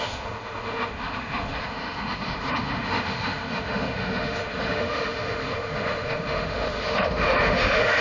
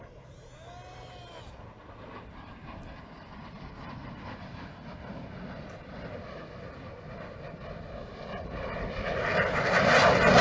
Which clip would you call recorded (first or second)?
second